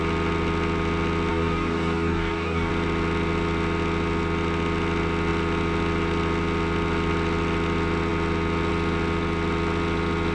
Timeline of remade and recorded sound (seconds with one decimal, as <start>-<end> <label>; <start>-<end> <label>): 0.0-1.3 recorded; 1.3-2.7 remade; 2.7-10.3 recorded